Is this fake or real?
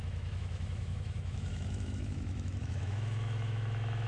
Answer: fake